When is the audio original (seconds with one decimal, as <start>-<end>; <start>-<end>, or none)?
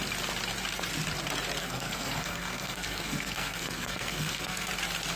0.0-1.6; 4.7-5.2